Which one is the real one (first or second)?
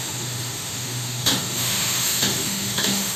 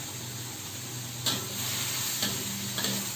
second